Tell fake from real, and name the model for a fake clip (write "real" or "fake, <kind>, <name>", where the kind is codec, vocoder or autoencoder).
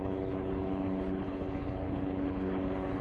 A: fake, codec, HILCodec